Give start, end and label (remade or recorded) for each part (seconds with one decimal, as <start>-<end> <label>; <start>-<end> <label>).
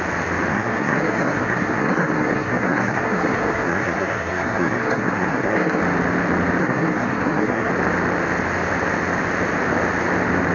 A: 0.0-0.5 recorded; 0.5-5.8 remade; 5.8-6.6 recorded; 6.6-7.7 remade; 7.7-10.5 recorded